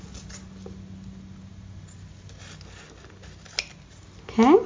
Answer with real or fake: real